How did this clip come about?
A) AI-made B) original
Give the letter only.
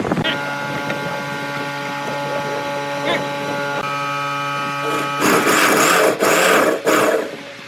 B